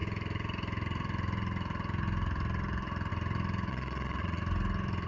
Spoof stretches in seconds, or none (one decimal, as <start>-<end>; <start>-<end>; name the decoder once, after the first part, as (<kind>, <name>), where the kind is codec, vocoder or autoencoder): 3.7-4.4 (vocoder, Vocos)